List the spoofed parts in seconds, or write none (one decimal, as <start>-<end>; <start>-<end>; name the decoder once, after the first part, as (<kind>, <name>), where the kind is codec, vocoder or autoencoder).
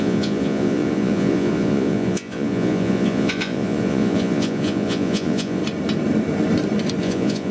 0.0-5.6 (vocoder, Vocos); 7.0-7.5